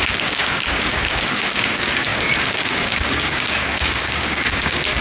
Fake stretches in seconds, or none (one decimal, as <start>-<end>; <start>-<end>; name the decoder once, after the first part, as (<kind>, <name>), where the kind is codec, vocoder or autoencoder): 0.0-5.0 (codec, DAC)